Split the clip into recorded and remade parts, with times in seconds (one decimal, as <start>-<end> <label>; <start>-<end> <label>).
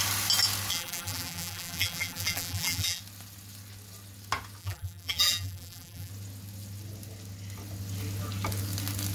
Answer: 0.0-0.7 recorded; 0.7-3.0 remade; 3.0-4.6 recorded; 4.6-6.1 remade; 6.1-9.1 recorded